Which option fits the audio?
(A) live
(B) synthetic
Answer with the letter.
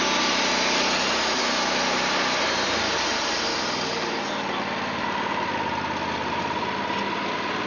A